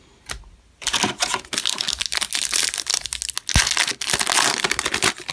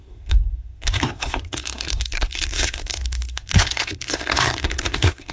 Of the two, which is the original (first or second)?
first